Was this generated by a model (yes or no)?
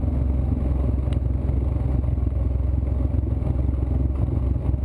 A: no